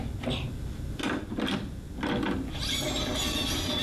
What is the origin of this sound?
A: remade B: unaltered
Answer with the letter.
B